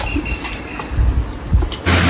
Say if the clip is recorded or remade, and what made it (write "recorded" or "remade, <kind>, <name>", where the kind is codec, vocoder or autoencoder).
recorded